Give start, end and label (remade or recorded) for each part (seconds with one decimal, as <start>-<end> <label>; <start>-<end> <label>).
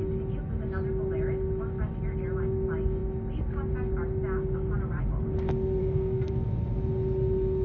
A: 0.0-5.8 recorded; 5.8-6.3 remade; 6.3-7.6 recorded